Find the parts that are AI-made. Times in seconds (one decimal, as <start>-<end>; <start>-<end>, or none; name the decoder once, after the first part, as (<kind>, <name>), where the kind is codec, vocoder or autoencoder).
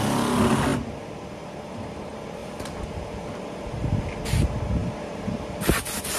0.7-2.0 (vocoder, BigVGAN v2); 2.4-4.2; 4.8-6.2